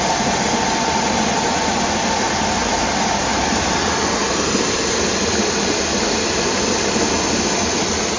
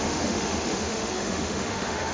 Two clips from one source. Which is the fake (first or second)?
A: second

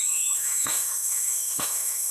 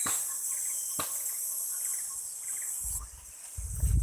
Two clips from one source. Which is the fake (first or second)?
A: first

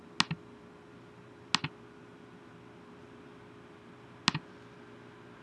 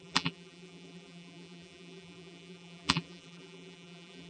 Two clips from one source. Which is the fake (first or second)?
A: second